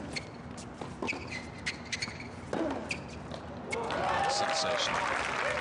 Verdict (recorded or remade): recorded